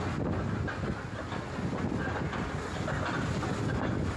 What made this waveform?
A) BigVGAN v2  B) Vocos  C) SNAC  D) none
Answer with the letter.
D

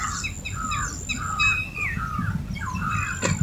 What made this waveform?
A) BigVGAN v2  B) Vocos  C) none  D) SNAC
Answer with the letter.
C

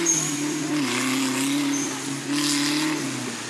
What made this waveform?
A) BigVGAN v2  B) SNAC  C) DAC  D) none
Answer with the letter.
D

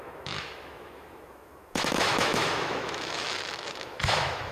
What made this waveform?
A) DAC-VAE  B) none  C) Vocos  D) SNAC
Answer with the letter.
A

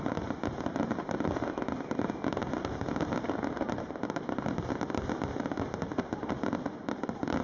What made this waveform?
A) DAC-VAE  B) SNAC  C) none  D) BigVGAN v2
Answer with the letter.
C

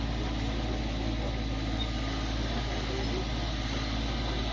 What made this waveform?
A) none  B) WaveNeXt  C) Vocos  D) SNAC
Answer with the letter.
A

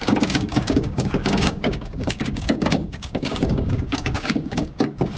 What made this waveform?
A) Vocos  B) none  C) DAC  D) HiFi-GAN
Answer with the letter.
C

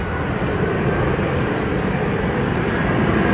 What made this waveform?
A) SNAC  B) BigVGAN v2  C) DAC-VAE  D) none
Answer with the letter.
B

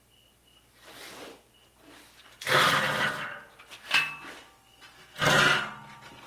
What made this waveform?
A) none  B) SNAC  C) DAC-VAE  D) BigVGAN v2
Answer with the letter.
A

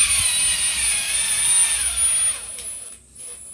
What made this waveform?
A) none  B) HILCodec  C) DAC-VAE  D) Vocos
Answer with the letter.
A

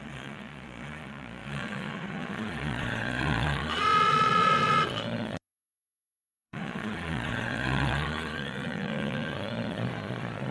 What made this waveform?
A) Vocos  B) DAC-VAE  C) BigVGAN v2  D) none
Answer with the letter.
A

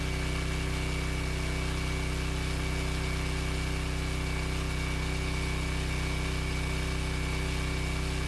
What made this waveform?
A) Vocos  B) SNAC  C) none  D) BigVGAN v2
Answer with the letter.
C